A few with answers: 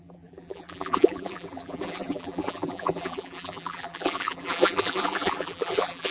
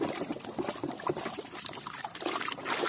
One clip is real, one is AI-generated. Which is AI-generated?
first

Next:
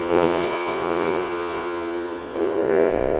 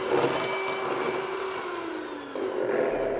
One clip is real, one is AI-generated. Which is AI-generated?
first